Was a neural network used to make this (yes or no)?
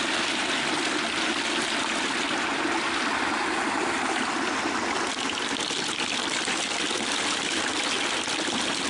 no